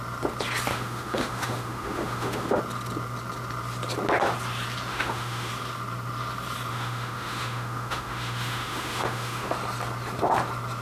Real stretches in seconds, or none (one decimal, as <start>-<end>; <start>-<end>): 0.0-0.7; 2.6-4.9; 5.5-6.7; 9.5-10.8